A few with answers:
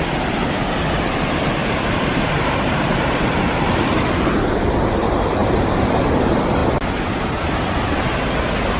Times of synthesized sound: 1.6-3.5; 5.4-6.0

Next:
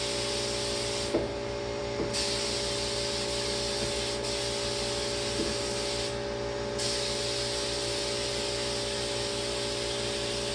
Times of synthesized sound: none